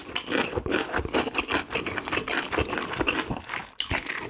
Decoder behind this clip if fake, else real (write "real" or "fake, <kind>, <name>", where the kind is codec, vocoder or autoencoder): real